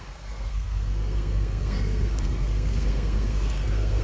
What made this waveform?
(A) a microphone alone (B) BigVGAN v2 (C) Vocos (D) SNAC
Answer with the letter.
D